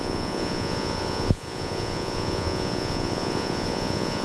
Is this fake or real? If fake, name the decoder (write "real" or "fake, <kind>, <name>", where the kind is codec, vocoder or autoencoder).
fake, vocoder, Vocos